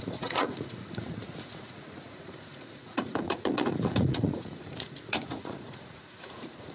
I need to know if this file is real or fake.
fake